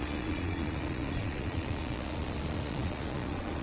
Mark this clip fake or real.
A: fake